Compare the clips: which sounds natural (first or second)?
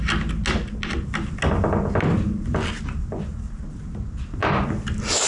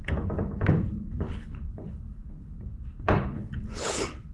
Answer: first